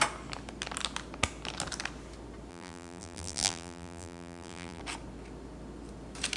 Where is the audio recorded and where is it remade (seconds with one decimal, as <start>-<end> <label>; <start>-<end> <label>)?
0.0-2.5 recorded; 2.5-4.8 remade; 4.8-6.4 recorded